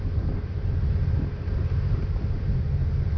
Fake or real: real